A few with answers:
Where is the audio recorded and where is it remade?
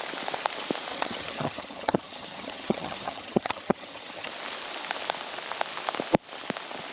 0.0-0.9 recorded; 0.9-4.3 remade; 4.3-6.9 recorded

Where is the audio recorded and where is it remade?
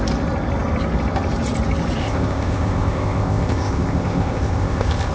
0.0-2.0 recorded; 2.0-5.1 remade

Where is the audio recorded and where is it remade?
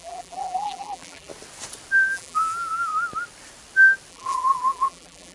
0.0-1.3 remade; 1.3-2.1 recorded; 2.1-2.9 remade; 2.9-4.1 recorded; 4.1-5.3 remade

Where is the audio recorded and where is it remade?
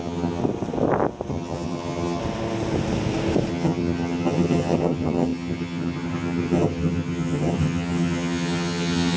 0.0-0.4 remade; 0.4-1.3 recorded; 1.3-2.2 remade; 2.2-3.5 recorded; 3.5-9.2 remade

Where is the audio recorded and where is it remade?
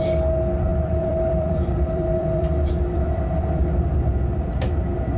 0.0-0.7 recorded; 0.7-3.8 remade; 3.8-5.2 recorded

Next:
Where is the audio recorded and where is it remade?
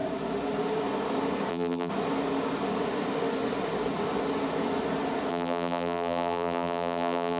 0.0-1.5 recorded; 1.5-1.9 remade; 1.9-5.3 recorded; 5.3-7.4 remade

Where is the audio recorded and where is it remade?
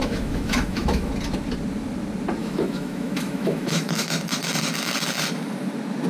0.0-1.1 remade; 1.1-2.4 recorded; 2.4-4.1 remade; 4.1-6.1 recorded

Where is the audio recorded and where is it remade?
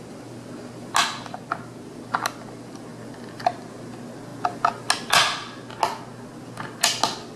0.0-7.4 recorded